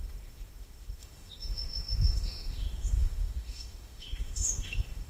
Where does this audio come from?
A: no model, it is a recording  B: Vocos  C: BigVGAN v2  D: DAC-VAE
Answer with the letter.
D